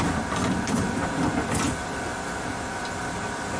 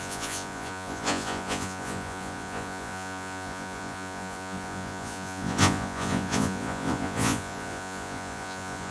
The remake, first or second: second